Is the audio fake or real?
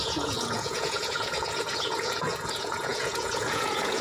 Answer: fake